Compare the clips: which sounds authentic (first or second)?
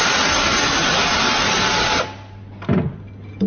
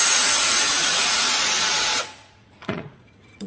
first